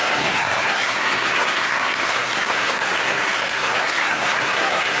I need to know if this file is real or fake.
fake